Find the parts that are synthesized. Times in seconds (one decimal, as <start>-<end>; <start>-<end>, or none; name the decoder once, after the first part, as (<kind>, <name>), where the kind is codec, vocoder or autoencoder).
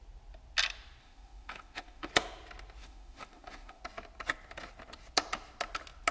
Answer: 1.0-2.1 (autoencoder, DAC-VAE); 2.8-3.8